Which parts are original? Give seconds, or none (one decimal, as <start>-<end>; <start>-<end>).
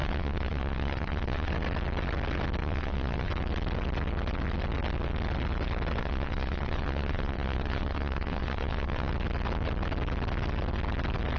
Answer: 1.5-2.6; 3.3-6.0; 9.1-11.4